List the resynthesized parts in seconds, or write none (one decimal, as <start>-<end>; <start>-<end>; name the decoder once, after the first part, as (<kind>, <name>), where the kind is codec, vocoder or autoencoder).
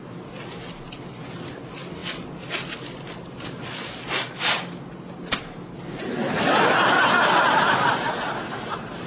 none